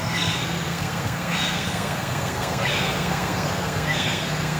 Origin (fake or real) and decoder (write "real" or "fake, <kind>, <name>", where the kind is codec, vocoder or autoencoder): fake, codec, SNAC